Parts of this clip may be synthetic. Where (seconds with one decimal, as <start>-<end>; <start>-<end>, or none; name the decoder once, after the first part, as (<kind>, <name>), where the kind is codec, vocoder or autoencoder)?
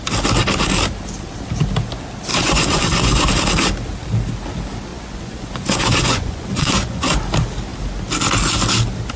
2.3-3.3 (vocoder, Vocos); 4.9-7.2